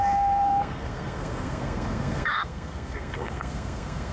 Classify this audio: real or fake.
fake